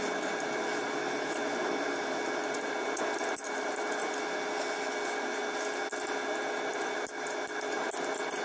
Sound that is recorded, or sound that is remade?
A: recorded